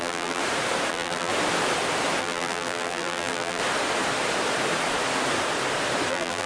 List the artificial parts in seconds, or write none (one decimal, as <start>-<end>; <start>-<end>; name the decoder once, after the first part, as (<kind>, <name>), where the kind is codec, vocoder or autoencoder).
0.0-0.4 (vocoder, BigVGAN v2); 0.9-1.3; 2.2-3.6; 6.1-6.5